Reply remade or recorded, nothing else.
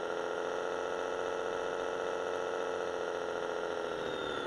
recorded